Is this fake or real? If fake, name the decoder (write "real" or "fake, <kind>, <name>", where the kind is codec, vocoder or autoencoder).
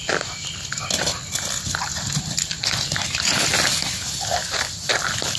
real